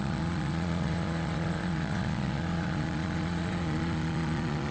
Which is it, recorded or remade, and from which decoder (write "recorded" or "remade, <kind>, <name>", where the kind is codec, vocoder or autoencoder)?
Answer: remade, vocoder, Vocos